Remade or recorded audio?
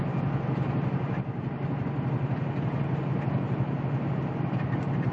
recorded